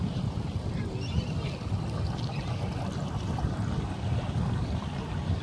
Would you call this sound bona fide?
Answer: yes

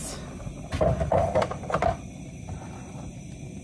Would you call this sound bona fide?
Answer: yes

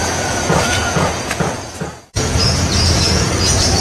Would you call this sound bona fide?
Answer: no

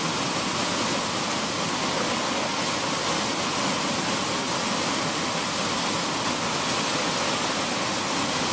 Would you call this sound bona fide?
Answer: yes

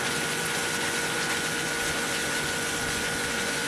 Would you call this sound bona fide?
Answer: no